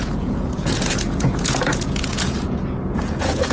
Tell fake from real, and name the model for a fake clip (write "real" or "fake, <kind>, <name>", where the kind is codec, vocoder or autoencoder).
fake, vocoder, Vocos